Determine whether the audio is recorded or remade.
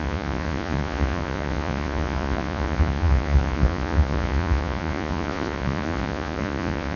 remade